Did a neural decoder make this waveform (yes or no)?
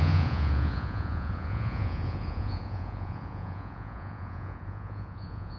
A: yes